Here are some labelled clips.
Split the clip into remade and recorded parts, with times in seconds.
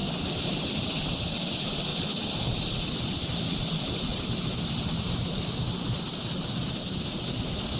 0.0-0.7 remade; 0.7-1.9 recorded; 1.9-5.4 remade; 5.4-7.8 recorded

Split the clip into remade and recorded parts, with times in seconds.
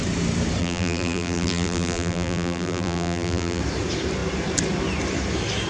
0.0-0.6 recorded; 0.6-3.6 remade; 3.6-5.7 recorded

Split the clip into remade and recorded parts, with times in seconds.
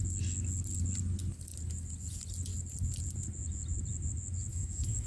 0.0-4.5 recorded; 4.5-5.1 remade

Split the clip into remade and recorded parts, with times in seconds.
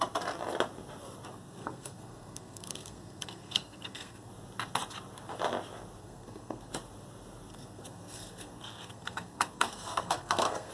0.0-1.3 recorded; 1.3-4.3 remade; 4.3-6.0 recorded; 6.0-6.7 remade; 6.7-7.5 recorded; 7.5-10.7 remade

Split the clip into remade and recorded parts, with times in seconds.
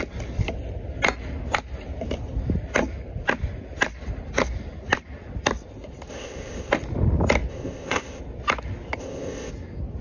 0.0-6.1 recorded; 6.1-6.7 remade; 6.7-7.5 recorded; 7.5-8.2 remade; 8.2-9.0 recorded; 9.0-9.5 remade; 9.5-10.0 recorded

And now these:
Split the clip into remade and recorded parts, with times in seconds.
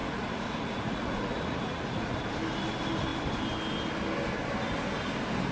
0.0-2.1 remade; 2.1-5.5 recorded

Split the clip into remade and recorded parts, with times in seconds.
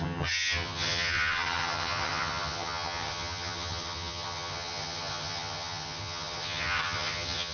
0.0-7.5 remade